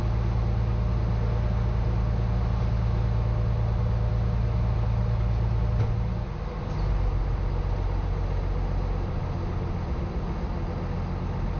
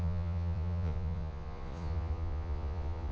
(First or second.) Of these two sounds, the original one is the first